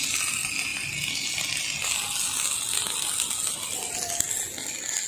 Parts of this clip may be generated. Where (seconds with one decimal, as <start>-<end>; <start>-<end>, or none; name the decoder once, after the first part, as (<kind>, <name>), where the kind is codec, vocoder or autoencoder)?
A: none